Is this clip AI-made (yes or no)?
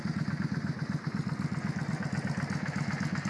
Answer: no